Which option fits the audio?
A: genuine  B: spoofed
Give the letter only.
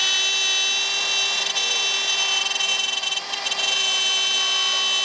A